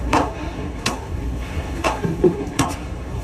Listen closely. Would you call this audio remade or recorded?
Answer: remade